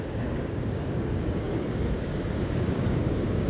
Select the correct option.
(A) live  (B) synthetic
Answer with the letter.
B